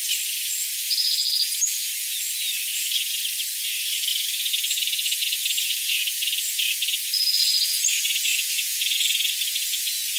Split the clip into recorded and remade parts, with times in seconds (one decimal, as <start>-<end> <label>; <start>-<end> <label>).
0.0-0.7 recorded; 0.7-2.1 remade; 2.1-2.7 recorded; 2.7-3.2 remade; 3.2-4.1 recorded; 4.1-9.3 remade; 9.3-10.2 recorded